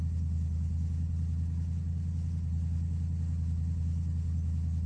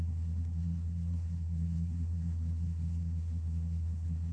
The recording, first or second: first